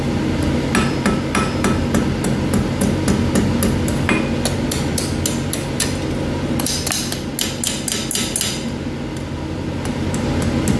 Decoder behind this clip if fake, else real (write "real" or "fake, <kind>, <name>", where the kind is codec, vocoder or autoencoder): real